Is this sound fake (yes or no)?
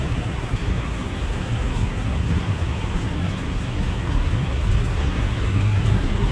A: yes